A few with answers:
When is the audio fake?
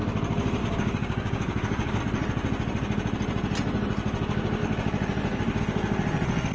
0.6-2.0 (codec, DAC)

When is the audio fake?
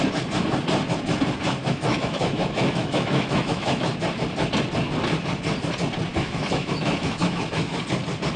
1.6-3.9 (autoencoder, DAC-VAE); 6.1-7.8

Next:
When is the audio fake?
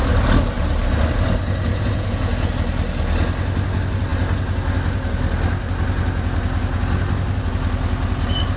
1.7-2.5 (vocoder, Vocos)